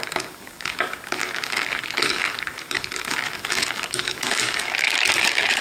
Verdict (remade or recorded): remade